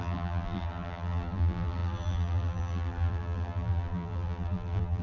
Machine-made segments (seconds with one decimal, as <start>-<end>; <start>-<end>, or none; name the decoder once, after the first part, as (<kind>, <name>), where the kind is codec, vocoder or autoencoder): 0.0-5.0 (vocoder, BigVGAN v2)